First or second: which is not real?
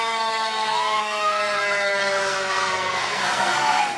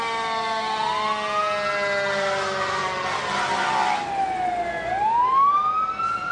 first